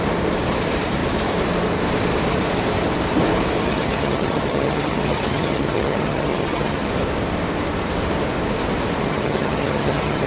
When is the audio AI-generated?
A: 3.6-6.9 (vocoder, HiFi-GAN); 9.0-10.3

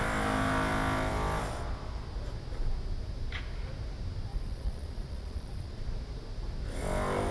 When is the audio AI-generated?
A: 4.3-5.8 (vocoder, Vocos)

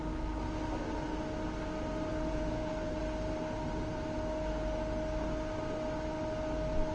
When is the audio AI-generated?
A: 2.1-3.0 (vocoder, Vocos)

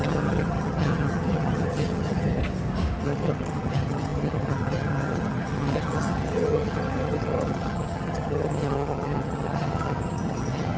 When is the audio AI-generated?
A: 0.0-2.4 (vocoder, HiFi-GAN); 3.0-10.8

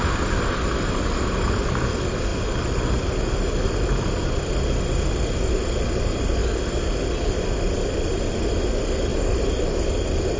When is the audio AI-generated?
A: none

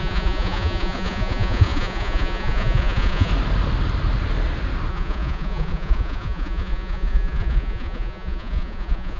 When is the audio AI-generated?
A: 0.0-3.3 (vocoder, Vocos); 4.9-9.2